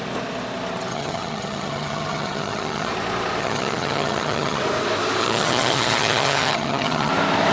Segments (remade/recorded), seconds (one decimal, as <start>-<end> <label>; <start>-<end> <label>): 0.0-0.9 recorded; 0.9-2.9 remade; 2.9-3.4 recorded; 3.4-4.6 remade; 4.6-5.2 recorded; 5.2-7.1 remade; 7.1-7.5 recorded